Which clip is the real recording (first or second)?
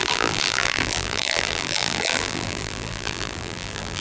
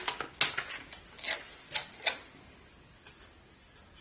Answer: second